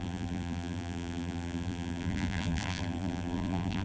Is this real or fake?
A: fake